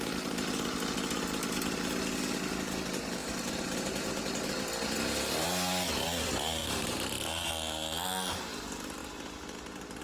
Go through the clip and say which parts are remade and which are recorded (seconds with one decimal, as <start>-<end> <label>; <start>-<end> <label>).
0.0-3.2 recorded; 3.2-4.1 remade; 4.1-6.6 recorded; 6.6-7.5 remade; 7.5-10.0 recorded